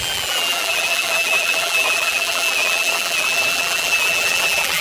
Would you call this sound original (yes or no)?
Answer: no